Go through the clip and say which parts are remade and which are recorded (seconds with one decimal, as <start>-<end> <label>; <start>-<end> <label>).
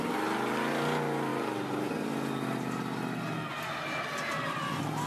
0.0-5.1 recorded